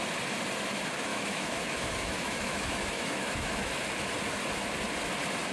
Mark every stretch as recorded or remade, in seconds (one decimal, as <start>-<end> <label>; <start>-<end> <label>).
0.0-1.1 recorded; 1.1-3.7 remade; 3.7-5.5 recorded